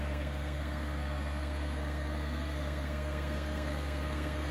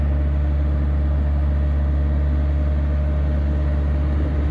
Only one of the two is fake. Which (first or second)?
first